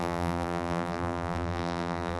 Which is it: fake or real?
fake